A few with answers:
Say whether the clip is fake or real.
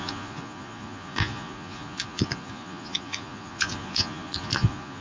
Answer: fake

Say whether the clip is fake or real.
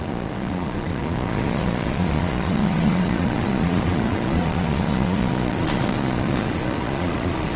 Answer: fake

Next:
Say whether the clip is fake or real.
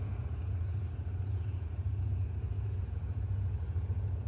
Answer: fake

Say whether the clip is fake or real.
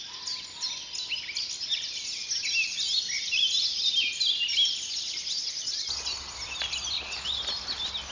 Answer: real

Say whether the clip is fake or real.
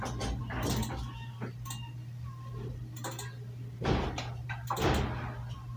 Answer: real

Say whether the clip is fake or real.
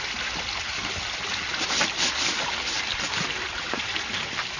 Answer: real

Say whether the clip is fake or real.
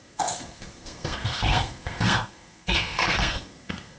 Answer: fake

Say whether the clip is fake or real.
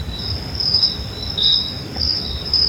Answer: fake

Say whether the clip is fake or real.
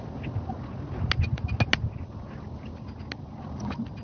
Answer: real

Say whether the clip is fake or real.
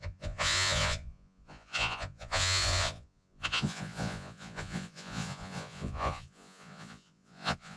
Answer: fake